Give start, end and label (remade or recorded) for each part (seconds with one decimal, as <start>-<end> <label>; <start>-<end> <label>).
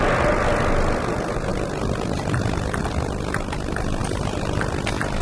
0.0-5.2 recorded